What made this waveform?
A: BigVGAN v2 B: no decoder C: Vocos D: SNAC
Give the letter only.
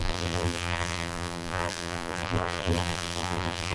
A